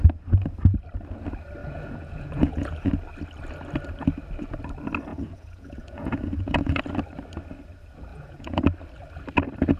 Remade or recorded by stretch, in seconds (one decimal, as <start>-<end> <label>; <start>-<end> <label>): 0.0-1.6 recorded; 1.6-2.9 remade; 2.9-5.1 recorded; 5.1-6.8 remade; 6.8-8.1 recorded; 8.1-8.6 remade; 8.6-9.8 recorded